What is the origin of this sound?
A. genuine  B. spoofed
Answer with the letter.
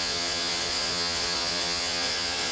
B